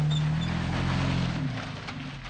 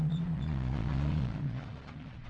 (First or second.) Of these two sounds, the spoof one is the second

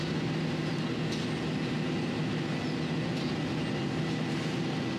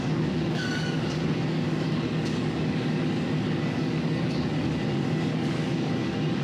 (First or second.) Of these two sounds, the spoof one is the second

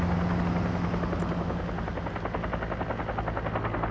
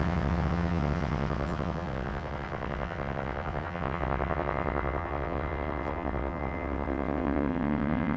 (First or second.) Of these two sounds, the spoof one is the second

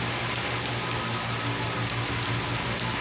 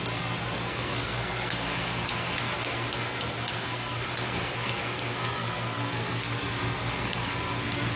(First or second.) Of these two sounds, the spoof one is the second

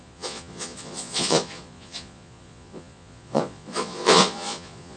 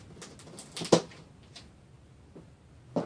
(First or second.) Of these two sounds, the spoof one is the first